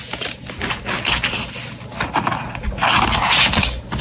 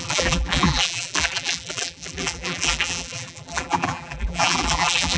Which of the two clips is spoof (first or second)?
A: second